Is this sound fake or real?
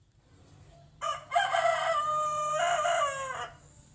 real